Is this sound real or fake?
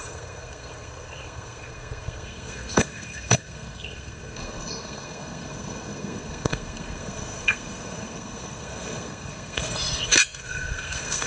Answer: fake